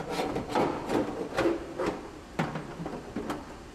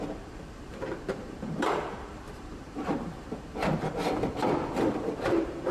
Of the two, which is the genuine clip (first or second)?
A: first